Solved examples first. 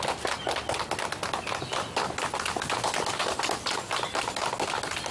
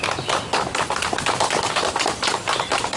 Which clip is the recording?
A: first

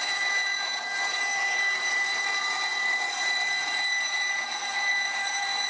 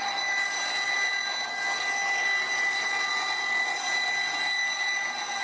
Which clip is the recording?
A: second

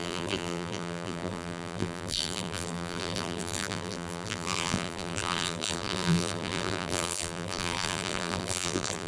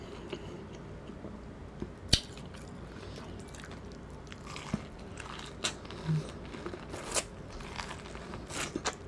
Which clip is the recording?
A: second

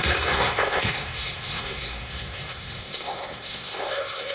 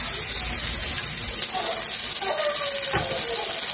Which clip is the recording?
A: second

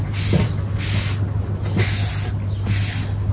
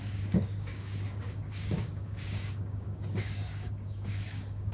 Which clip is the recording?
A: first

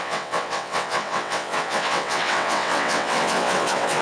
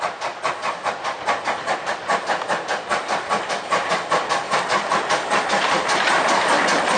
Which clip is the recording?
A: second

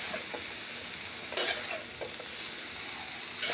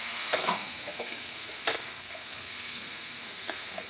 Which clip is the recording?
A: first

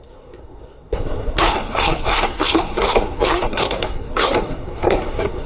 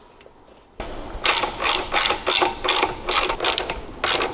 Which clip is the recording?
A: second